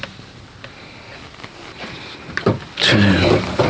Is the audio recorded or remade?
recorded